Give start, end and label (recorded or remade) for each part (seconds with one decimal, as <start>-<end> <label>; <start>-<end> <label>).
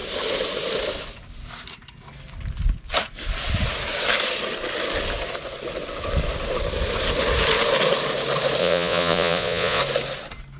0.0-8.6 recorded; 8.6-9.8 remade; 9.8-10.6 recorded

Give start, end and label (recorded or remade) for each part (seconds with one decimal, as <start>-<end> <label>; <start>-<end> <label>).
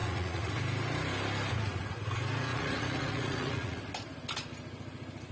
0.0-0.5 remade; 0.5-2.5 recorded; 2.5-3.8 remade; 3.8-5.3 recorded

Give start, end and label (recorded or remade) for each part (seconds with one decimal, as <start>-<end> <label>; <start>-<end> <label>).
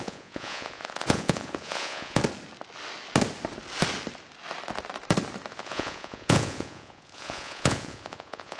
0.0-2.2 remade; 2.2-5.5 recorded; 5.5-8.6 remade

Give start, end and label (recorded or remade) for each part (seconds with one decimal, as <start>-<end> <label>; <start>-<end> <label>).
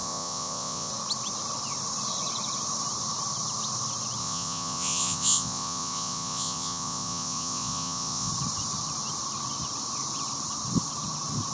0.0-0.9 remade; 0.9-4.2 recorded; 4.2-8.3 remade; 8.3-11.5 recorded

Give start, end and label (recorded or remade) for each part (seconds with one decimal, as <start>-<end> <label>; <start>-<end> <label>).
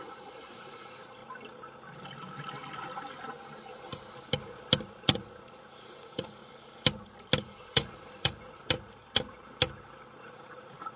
0.0-1.2 remade; 1.2-4.9 recorded; 4.9-6.4 remade; 6.4-7.4 recorded; 7.4-8.6 remade; 8.6-10.2 recorded; 10.2-11.0 remade